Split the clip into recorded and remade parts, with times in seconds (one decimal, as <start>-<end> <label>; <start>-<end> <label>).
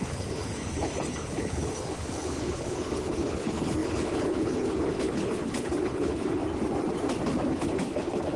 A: 0.0-6.4 remade; 6.4-7.5 recorded; 7.5-8.4 remade